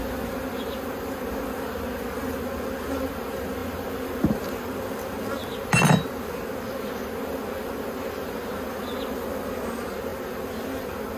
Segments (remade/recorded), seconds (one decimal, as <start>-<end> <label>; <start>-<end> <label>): 0.0-11.2 recorded